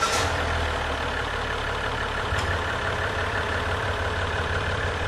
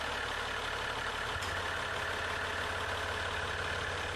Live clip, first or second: second